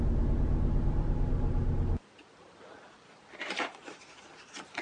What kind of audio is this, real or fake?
real